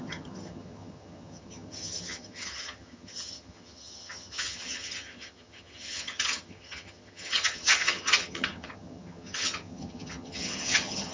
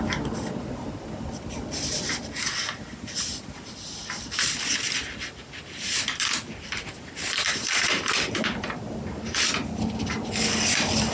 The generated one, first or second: first